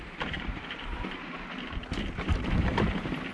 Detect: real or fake fake